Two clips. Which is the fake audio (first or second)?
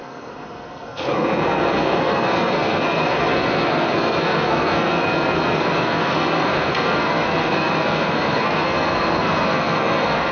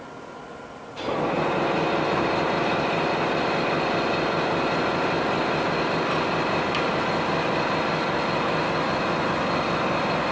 first